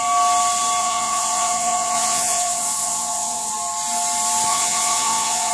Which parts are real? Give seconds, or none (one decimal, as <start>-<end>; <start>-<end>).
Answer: 0.0-0.8; 3.5-4.5